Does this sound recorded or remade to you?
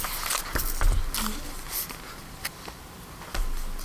recorded